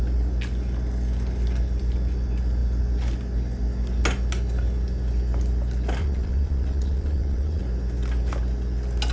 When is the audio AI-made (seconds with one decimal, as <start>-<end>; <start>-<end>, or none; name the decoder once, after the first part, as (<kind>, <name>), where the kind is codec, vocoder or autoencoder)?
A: 6.0-7.6 (vocoder, Vocos)